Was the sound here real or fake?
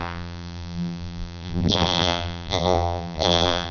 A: fake